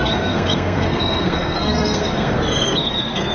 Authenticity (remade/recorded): remade